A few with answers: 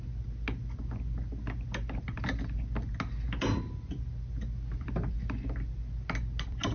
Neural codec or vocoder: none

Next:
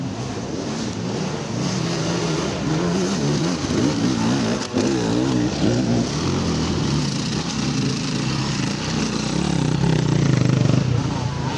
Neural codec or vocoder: none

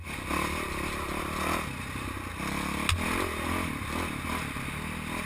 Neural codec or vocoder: none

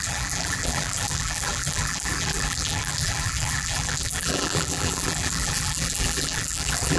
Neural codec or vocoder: vocoder, BigVGAN v2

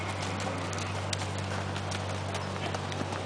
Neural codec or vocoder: none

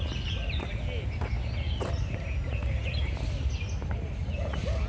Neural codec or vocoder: none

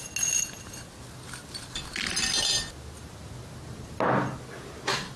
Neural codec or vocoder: none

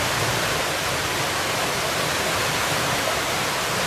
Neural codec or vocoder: none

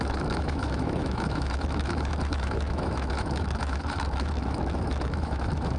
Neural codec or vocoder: autoencoder, DAC-VAE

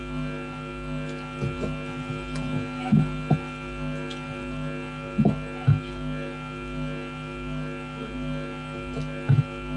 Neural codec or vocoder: none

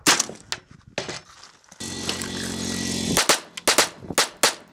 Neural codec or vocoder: none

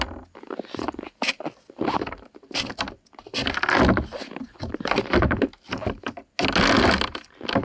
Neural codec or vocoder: none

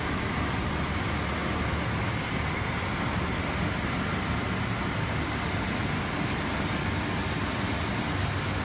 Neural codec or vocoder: none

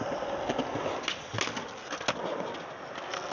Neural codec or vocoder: none